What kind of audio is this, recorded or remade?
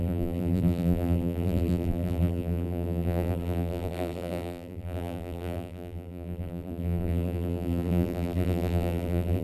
remade